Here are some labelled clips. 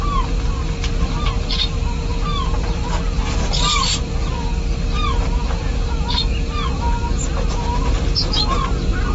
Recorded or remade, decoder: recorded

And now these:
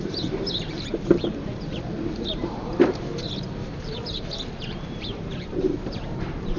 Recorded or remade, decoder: remade, vocoder, BigVGAN v2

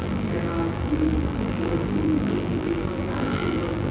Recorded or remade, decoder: remade, vocoder, BigVGAN v2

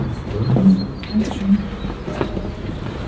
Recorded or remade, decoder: remade, vocoder, BigVGAN v2